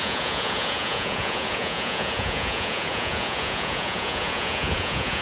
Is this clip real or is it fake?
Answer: fake